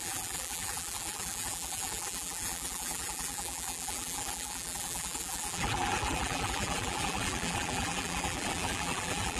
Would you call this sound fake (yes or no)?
yes